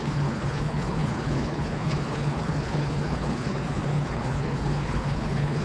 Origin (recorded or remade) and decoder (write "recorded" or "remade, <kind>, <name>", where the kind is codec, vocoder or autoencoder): remade, codec, HILCodec